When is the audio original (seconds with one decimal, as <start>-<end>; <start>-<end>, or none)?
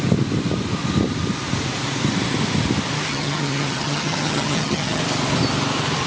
0.0-3.1; 5.0-6.1